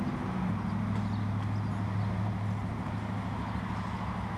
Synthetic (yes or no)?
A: no